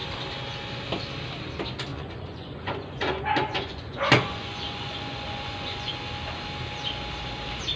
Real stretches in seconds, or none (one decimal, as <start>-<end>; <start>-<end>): 0.0-1.9; 5.9-7.8